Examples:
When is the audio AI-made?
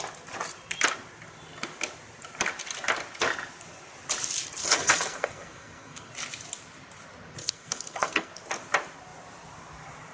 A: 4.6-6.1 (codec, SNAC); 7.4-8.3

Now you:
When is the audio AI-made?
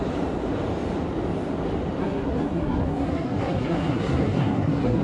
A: 2.0-5.0 (codec, SNAC)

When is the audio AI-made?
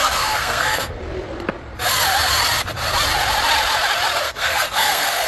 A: 0.0-1.0 (codec, SNAC); 4.2-5.3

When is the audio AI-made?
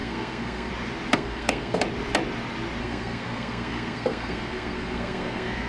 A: 0.0-0.7 (codec, SNAC); 1.1-1.8; 2.8-5.7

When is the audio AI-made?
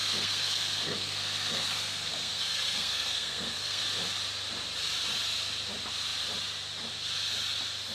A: 0.0-3.8 (codec, SNAC)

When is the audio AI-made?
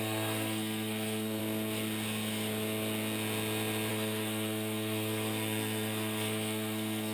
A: 0.0-1.4 (codec, SNAC); 3.9-7.1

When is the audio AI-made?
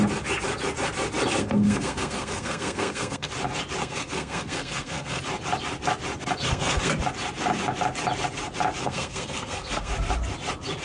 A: 1.4-3.3 (codec, SNAC); 3.8-5.2; 6.4-6.9; 8.8-9.9